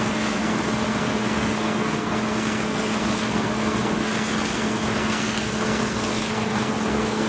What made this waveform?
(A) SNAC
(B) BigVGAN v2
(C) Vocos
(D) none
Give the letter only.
A